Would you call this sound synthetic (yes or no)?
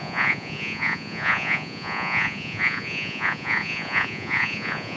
yes